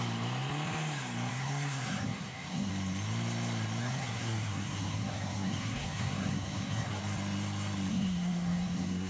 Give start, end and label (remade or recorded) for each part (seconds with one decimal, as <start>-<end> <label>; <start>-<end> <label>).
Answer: 0.0-1.3 recorded; 1.3-2.7 remade; 2.7-3.8 recorded; 3.8-7.0 remade; 7.0-7.9 recorded; 7.9-9.1 remade